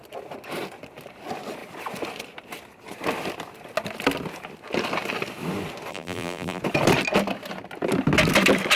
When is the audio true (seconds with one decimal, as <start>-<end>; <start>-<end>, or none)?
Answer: 0.0-5.9; 6.6-8.8